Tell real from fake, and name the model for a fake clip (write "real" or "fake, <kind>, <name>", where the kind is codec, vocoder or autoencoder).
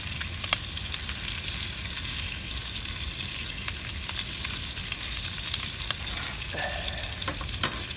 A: real